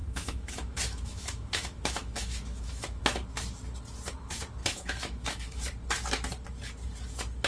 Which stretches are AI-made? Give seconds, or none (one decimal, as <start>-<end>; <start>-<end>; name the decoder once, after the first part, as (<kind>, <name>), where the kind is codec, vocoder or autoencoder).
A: 0.0-3.0 (autoencoder, DAC-VAE); 4.6-5.6